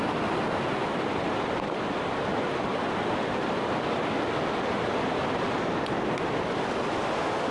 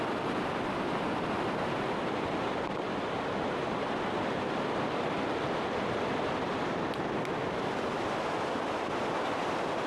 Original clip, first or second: first